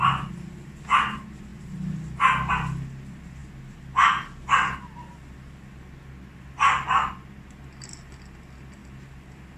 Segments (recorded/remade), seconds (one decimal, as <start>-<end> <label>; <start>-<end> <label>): 0.0-1.5 remade; 1.5-2.5 recorded; 2.5-3.4 remade; 3.4-6.3 recorded; 6.3-9.6 remade